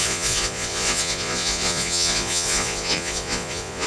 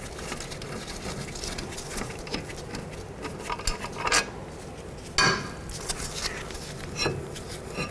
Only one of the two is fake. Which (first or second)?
first